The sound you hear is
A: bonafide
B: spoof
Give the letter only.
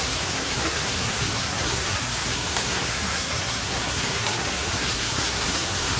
B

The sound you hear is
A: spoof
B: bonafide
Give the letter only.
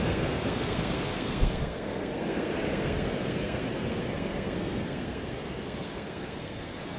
A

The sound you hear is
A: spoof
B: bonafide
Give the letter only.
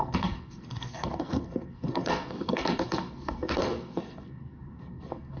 A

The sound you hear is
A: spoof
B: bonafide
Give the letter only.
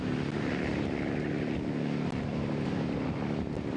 B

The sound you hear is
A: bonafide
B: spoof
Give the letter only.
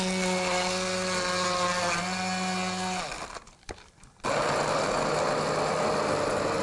A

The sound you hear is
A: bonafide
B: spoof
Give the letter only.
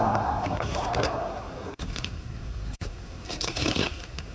B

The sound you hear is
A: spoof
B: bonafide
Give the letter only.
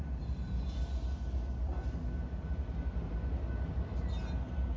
B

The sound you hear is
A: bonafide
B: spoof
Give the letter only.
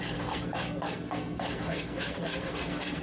B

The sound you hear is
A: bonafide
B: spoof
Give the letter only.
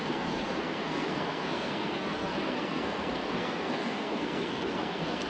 B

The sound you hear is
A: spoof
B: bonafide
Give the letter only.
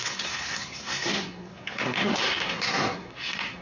A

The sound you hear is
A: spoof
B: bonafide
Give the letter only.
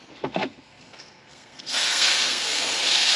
A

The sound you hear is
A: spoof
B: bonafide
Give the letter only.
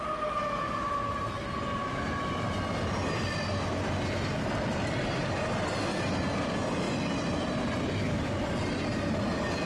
B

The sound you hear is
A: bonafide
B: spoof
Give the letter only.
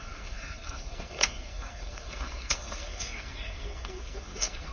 B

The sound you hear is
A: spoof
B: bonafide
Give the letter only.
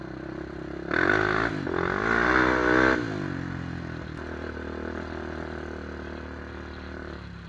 B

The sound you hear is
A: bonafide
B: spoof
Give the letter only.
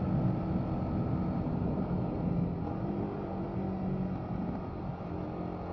A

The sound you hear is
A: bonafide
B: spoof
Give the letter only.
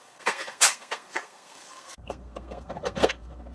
B